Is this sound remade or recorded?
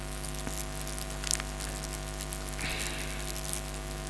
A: recorded